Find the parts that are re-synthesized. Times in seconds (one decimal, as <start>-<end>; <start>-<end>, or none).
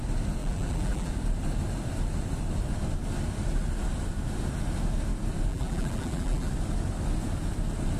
0.4-1.1; 5.5-6.5